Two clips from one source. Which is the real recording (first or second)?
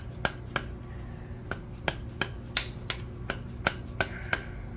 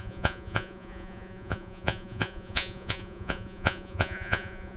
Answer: first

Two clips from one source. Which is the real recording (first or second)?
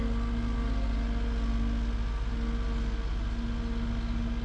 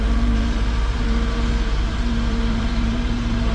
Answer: first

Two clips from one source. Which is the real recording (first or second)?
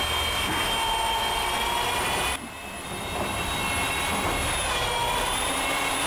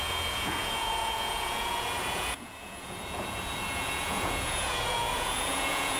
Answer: first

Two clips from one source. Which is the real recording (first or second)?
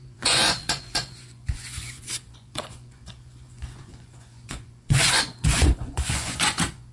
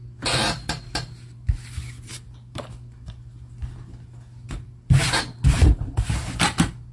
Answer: second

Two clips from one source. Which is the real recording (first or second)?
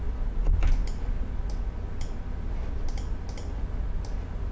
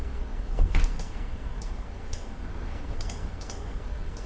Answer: first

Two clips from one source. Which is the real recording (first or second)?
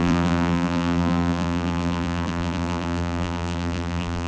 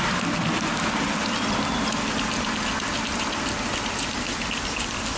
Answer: second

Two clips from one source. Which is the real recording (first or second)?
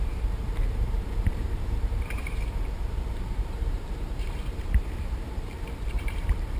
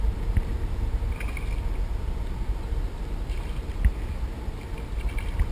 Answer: second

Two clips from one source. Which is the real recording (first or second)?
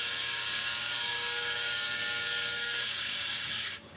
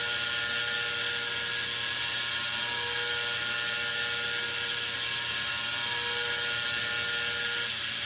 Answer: second